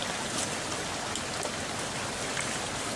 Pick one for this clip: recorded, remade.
recorded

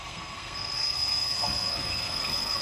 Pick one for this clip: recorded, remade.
remade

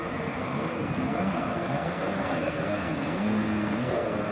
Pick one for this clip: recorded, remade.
remade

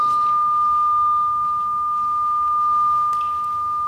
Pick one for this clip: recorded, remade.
recorded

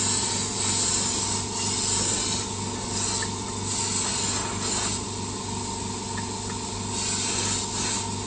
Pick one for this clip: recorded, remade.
recorded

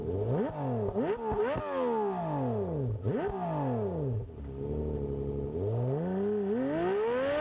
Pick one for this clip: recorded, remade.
recorded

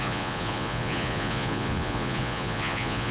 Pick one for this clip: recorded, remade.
remade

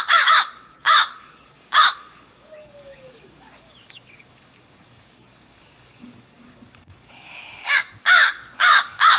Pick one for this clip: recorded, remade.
remade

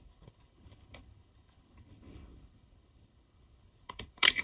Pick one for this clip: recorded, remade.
remade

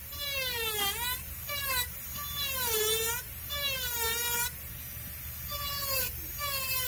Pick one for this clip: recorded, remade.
recorded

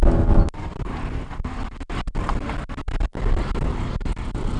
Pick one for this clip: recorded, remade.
recorded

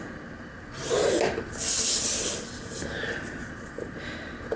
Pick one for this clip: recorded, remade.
recorded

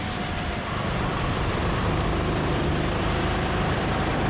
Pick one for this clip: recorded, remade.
remade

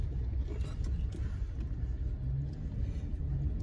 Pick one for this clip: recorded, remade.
recorded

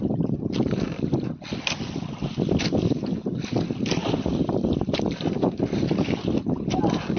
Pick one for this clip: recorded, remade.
recorded